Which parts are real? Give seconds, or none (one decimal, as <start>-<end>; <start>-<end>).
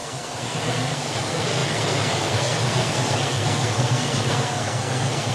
none